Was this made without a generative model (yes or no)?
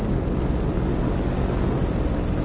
yes